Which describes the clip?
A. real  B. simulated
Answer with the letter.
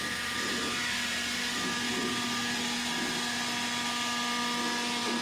A